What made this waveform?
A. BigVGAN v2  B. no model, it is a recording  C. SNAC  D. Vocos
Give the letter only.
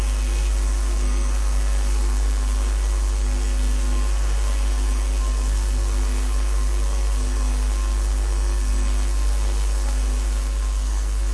C